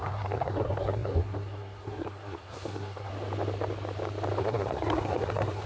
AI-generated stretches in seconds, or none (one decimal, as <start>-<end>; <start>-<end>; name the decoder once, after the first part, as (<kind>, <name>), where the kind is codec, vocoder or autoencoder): 0.0-3.1 (codec, SNAC); 4.4-5.7